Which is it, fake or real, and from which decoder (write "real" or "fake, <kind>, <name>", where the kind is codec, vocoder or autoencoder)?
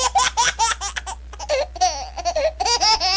real